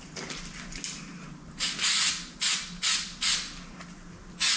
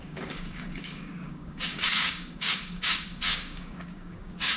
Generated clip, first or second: second